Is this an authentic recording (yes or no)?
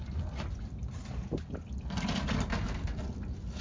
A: yes